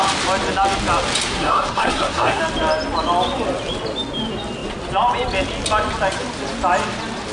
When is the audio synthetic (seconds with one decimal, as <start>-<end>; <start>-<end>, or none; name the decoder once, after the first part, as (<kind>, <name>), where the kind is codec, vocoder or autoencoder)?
1.3-2.4 (codec, SNAC)